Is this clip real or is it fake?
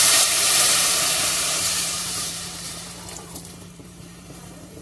fake